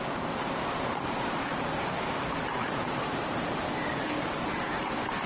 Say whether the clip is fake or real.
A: fake